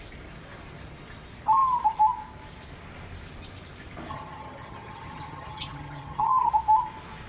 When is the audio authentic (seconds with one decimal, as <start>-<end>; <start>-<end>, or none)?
0.0-4.1; 6.5-7.3